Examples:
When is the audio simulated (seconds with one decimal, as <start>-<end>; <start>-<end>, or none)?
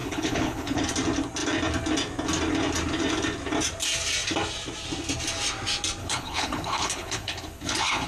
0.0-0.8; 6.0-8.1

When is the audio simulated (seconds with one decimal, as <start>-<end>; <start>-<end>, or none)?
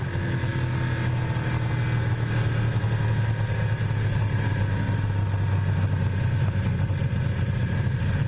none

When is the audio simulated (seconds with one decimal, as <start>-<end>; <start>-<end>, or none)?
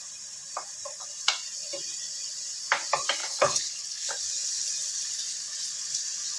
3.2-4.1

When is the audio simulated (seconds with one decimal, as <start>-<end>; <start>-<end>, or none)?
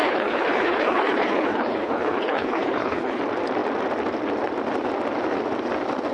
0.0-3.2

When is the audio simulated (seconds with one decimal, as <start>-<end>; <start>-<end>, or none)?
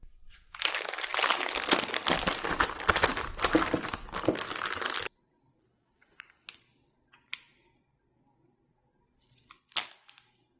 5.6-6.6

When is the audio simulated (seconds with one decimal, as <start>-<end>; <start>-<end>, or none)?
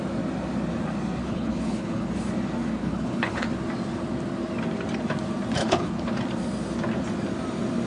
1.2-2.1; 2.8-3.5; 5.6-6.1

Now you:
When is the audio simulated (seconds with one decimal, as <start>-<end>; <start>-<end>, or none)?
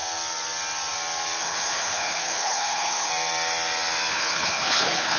1.4-3.1; 4.1-5.2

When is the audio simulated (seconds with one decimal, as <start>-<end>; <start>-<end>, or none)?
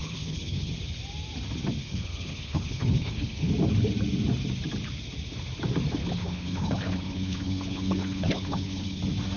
0.0-0.7; 1.8-3.5; 6.0-9.0